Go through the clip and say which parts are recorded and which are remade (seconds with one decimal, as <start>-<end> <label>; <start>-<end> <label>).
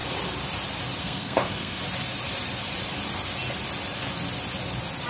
0.0-1.0 recorded; 1.0-1.8 remade; 1.8-5.1 recorded